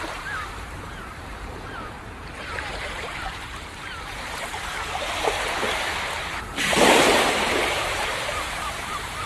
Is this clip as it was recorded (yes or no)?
no